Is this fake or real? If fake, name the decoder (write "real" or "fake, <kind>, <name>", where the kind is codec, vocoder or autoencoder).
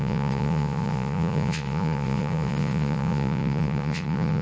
fake, vocoder, Vocos